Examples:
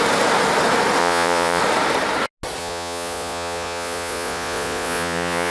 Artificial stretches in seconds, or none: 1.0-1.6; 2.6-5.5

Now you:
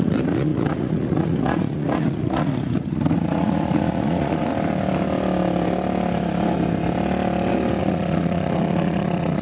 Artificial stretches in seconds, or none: 0.0-4.5; 7.8-9.4